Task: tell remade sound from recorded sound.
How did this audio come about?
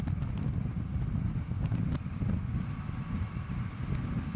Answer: recorded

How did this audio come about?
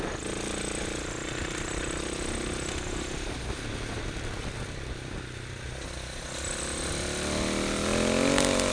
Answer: recorded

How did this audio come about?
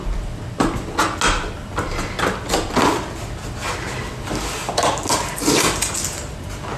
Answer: recorded